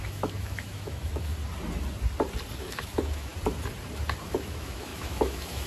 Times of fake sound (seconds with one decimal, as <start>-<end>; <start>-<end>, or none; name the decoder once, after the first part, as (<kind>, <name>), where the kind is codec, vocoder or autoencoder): 0.0-1.3 (autoencoder, DAC-VAE); 2.6-3.3; 4.3-5.7